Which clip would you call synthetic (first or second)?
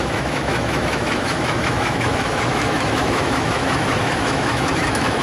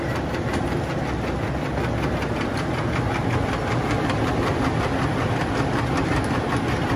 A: first